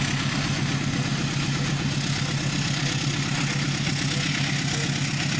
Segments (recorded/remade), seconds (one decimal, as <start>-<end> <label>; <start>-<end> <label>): 0.0-5.4 recorded